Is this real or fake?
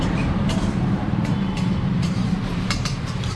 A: fake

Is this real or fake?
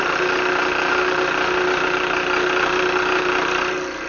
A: real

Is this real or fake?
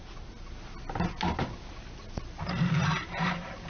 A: real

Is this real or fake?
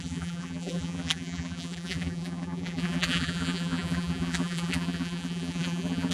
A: fake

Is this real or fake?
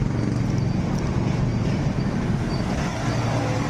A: real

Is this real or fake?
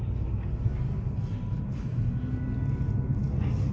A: real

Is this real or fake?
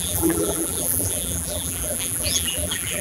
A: fake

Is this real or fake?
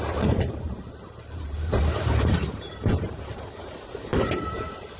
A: fake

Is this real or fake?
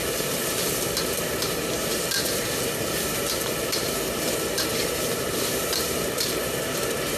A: fake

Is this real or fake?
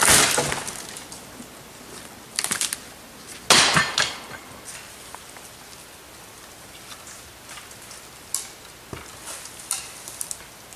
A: real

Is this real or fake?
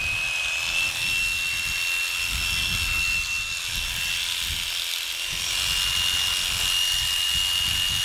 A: real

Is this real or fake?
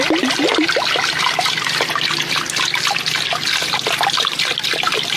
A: real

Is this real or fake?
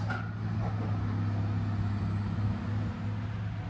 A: real